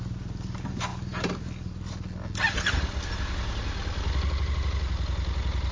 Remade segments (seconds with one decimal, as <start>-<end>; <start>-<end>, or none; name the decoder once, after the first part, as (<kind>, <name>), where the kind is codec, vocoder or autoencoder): none